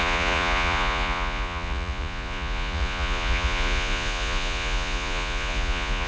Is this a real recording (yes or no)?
no